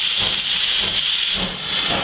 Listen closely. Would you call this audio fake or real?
real